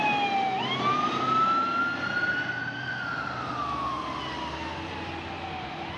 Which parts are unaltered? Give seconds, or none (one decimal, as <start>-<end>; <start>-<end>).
0.0-2.2; 2.9-6.0